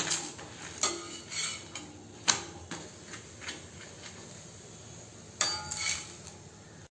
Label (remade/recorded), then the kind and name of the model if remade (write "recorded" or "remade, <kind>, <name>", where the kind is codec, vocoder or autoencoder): recorded